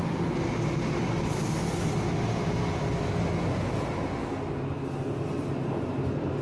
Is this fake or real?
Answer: real